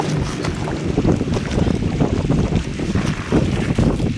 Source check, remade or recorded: recorded